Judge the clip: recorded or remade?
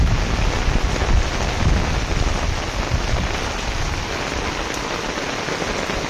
recorded